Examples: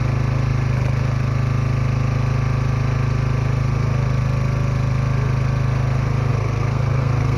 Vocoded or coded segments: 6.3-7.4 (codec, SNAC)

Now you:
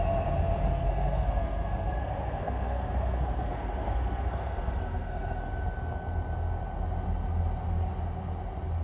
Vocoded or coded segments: 0.7-5.4 (codec, SNAC)

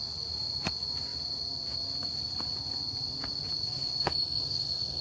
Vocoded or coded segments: 4.0-5.0 (codec, SNAC)